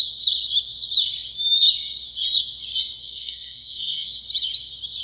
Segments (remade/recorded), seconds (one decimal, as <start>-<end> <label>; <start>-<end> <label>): 0.0-3.0 recorded; 3.0-4.2 remade; 4.2-5.0 recorded